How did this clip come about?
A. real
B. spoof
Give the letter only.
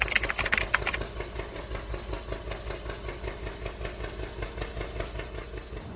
A